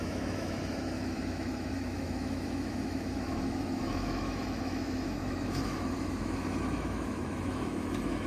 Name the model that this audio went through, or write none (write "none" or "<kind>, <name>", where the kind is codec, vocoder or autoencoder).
autoencoder, DAC-VAE